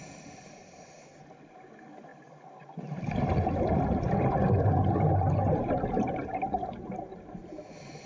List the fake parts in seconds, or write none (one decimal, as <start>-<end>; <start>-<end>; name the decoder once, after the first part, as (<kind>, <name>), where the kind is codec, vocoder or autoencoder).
2.1-7.0 (vocoder, BigVGAN v2)